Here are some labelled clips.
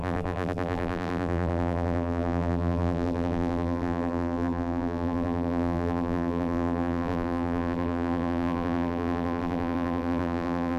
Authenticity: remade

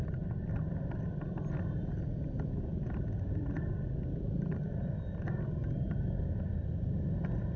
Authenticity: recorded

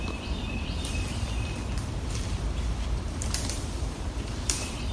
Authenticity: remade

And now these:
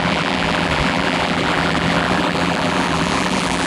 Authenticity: remade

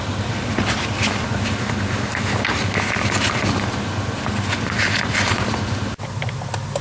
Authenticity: recorded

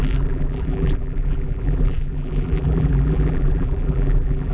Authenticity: remade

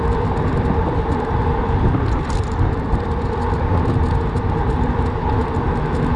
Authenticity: remade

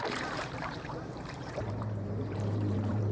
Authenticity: remade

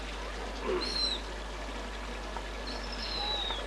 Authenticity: recorded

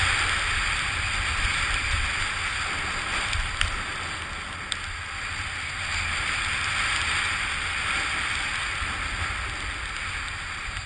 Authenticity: recorded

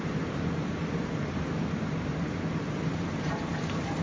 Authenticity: remade